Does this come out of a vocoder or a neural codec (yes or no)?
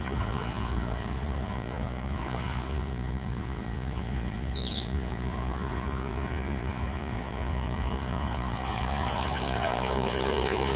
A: yes